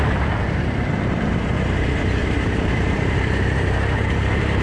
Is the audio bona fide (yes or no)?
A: no